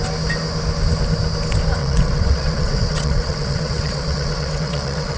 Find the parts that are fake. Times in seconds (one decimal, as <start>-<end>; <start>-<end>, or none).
1.8-5.2